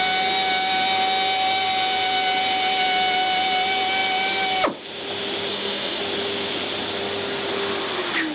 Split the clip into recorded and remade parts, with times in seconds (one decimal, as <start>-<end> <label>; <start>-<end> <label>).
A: 0.0-5.5 recorded; 5.5-6.0 remade; 6.0-8.3 recorded